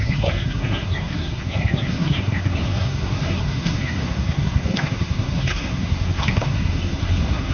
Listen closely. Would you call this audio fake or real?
fake